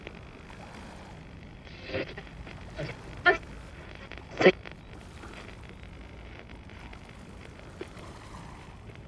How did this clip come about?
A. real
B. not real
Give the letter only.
A